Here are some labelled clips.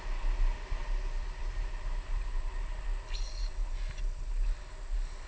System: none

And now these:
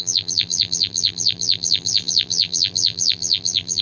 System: vocoder, BigVGAN v2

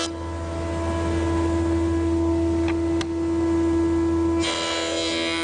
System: none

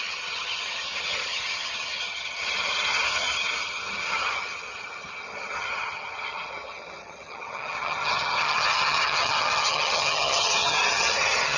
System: vocoder, HiFi-GAN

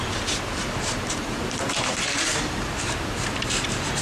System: vocoder, BigVGAN v2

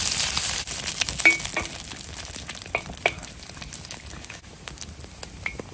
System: none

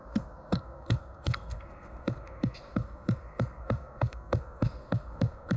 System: codec, SNAC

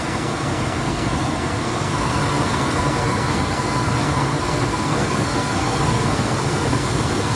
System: codec, SNAC